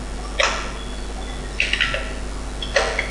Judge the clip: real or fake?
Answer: real